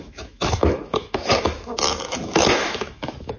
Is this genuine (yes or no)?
no